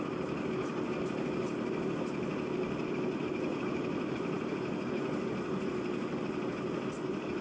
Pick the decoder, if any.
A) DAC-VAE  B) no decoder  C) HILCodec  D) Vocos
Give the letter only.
B